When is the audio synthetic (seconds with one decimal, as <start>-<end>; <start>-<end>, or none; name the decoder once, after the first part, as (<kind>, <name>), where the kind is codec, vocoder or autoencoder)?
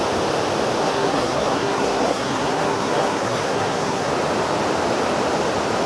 0.8-4.1 (codec, SNAC)